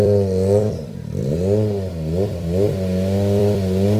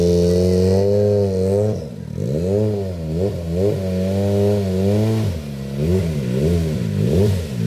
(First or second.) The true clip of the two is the second